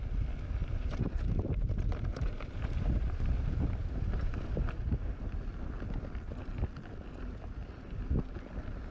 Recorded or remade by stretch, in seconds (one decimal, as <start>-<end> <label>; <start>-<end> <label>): 0.0-0.6 recorded; 0.6-3.3 remade; 3.3-3.8 recorded; 3.8-5.2 remade; 5.2-8.9 recorded